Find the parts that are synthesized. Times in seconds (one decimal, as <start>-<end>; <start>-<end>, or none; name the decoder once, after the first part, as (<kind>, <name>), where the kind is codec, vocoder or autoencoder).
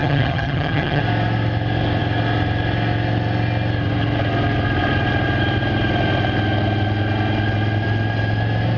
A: 0.0-1.0 (vocoder, HiFi-GAN)